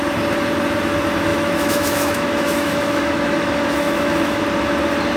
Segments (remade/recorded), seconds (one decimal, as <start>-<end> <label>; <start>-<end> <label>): 0.0-1.3 recorded; 1.3-4.4 remade; 4.4-5.2 recorded